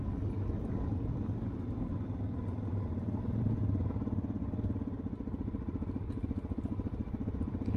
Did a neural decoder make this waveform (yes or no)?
no